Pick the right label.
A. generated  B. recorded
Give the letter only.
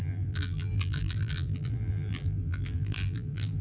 A